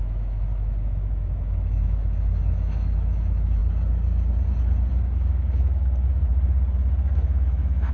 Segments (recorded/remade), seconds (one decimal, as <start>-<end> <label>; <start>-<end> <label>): 0.0-3.6 remade; 3.6-4.9 recorded; 4.9-6.3 remade; 6.3-7.1 recorded; 7.1-7.9 remade